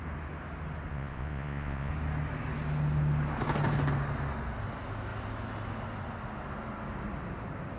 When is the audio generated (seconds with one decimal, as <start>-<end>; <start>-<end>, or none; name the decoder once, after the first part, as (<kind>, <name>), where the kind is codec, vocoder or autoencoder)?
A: 0.9-1.9 (vocoder, Vocos)